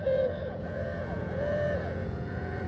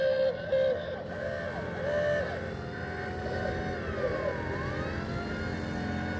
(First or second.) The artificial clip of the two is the first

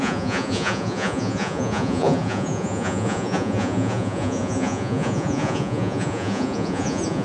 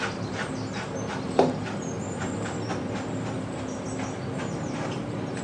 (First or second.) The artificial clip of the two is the first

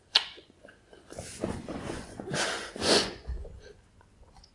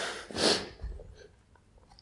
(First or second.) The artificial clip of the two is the first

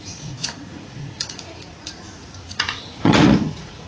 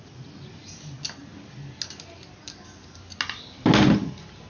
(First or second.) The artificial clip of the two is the first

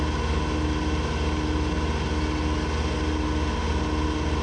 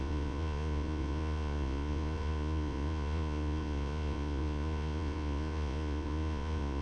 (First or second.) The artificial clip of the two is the second